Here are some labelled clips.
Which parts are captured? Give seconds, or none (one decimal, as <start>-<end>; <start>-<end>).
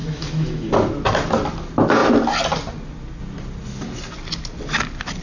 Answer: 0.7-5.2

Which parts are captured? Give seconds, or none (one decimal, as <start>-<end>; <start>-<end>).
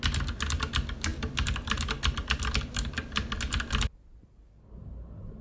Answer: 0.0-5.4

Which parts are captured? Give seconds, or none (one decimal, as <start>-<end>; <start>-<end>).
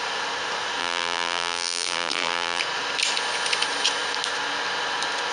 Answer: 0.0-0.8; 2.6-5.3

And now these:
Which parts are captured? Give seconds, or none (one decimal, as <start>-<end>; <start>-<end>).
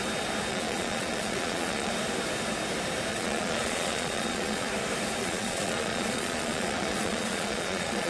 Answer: 0.0-0.5; 1.9-3.1; 4.7-5.2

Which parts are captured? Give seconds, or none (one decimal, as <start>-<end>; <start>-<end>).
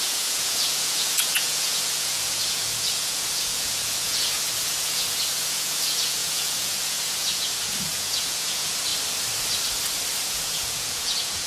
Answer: 8.9-10.3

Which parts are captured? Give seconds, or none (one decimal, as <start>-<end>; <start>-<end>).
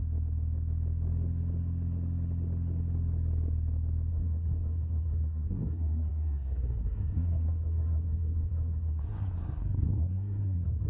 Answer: 0.0-4.1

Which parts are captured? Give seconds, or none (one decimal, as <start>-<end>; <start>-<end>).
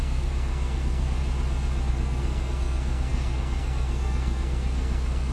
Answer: 1.2-1.9